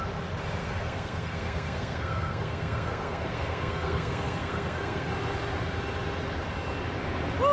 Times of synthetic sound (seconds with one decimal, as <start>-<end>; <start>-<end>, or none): 0.6-5.1